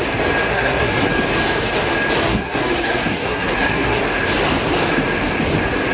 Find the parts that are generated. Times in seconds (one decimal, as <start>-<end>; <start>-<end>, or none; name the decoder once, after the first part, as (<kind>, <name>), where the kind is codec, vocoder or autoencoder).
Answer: 0.5-1.1 (codec, SNAC); 2.3-4.0